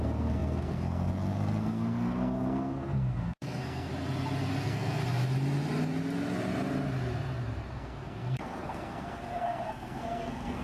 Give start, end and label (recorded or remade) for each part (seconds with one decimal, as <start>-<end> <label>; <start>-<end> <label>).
0.0-3.9 remade; 3.9-4.6 recorded; 4.6-5.0 remade; 5.0-7.7 recorded; 7.7-10.6 remade